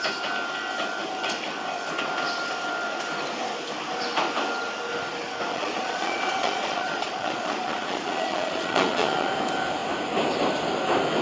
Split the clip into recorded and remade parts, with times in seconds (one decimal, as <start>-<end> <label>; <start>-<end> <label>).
0.0-5.5 recorded; 5.5-9.3 remade; 9.3-11.2 recorded